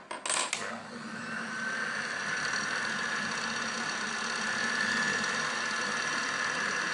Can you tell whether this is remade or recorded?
recorded